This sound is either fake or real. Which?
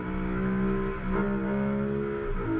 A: real